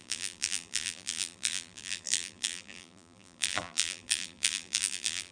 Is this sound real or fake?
fake